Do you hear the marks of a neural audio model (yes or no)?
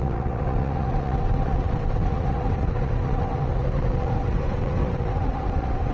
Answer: yes